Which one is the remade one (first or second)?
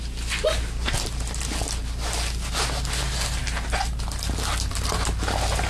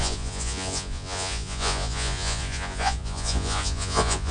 second